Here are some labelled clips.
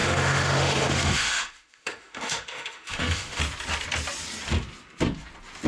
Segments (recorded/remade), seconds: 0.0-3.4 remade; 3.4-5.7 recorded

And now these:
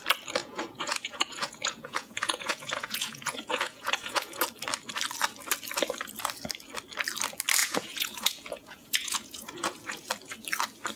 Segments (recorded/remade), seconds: 0.0-0.4 recorded; 0.4-4.4 remade; 4.4-7.6 recorded; 7.6-10.1 remade; 10.1-11.0 recorded

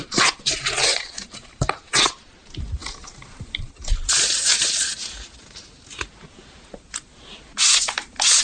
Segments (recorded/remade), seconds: 0.0-8.4 recorded

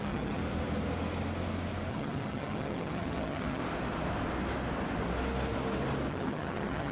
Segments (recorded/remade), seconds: 0.0-0.4 remade; 0.4-1.9 recorded; 1.9-3.6 remade; 3.6-6.1 recorded; 6.1-6.9 remade

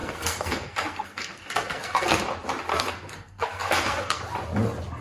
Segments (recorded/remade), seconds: 0.0-2.2 remade; 2.2-2.7 recorded; 2.7-4.2 remade; 4.2-5.0 recorded

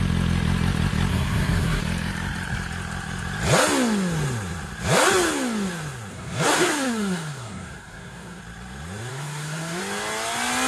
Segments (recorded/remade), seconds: 0.0-1.1 recorded; 1.1-1.8 remade; 1.8-6.1 recorded; 6.1-8.4 remade; 8.4-9.1 recorded; 9.1-9.8 remade; 9.8-10.7 recorded

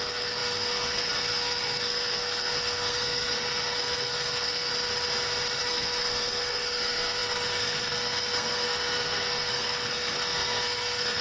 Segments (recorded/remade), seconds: 0.0-4.7 remade; 4.7-5.6 recorded; 5.6-11.2 remade